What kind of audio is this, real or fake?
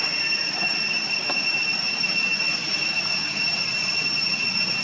real